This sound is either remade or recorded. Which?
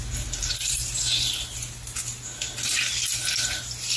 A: recorded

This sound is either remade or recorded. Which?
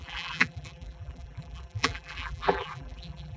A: remade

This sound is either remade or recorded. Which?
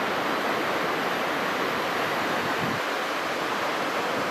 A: recorded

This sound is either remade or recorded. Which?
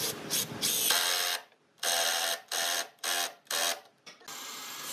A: recorded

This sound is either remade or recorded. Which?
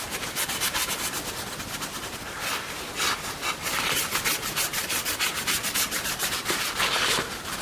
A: recorded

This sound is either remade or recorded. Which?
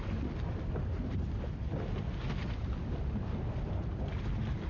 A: recorded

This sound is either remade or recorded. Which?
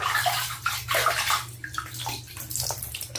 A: recorded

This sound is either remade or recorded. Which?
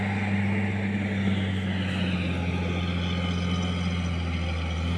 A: recorded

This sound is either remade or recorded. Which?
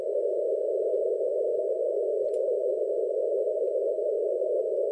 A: recorded